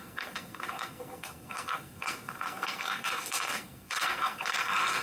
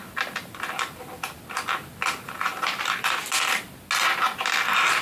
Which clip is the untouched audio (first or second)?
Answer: second